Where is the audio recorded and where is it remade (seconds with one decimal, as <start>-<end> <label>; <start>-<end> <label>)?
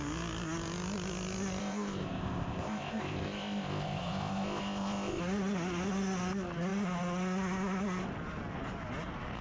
0.0-1.6 recorded; 1.6-5.2 remade; 5.2-9.4 recorded